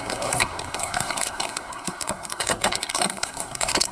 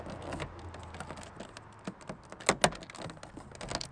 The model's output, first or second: first